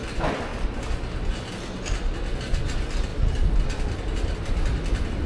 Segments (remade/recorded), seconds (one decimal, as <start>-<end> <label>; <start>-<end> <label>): 0.0-5.3 recorded